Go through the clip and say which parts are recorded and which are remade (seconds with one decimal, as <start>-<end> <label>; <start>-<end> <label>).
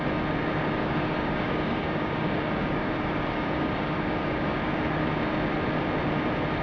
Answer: 0.0-0.8 recorded; 0.8-4.7 remade; 4.7-6.6 recorded